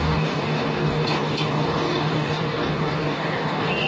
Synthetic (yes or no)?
yes